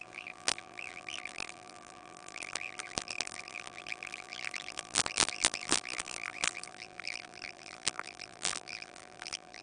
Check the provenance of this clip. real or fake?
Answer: fake